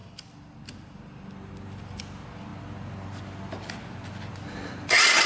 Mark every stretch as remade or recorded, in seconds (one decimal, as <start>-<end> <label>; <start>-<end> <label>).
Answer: 0.0-5.3 recorded